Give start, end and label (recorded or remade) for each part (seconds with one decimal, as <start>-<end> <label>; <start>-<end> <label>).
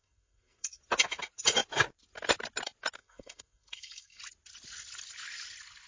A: 0.0-0.8 remade; 0.8-3.0 recorded; 3.0-4.2 remade; 4.2-5.9 recorded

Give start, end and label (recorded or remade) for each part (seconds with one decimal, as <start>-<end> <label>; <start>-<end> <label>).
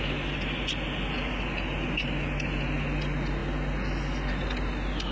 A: 0.0-5.1 recorded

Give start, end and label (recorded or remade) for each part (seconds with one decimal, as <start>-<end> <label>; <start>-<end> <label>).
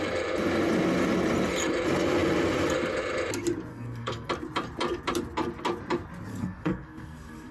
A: 0.0-3.7 recorded; 3.7-4.3 remade; 4.3-6.3 recorded; 6.3-7.5 remade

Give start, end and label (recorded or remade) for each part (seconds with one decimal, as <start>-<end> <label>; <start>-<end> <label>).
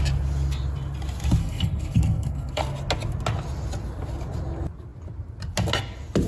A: 0.0-1.4 recorded; 1.4-2.6 remade; 2.6-6.3 recorded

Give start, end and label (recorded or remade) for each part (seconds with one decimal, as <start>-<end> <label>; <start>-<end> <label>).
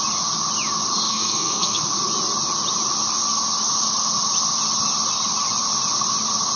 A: 0.0-1.1 recorded; 1.1-1.8 remade; 1.8-6.6 recorded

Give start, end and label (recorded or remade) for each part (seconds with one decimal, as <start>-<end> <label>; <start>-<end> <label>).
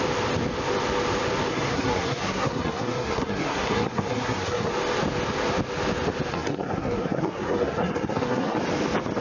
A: 0.0-1.5 recorded; 1.5-4.7 remade; 4.7-6.3 recorded; 6.3-8.6 remade; 8.6-9.2 recorded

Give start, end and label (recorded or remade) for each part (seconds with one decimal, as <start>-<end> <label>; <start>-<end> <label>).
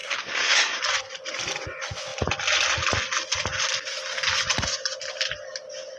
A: 0.0-0.8 remade; 0.8-6.0 recorded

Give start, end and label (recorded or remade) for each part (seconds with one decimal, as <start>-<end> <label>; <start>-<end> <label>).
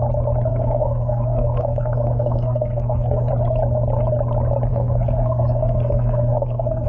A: 0.0-0.5 recorded; 0.5-3.3 remade; 3.3-4.7 recorded; 4.7-6.9 remade